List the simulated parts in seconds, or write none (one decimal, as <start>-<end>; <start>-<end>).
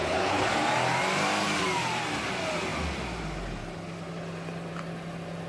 0.0-0.5